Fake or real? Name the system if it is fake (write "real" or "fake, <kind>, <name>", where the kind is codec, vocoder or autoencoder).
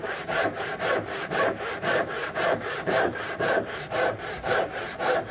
fake, vocoder, BigVGAN v2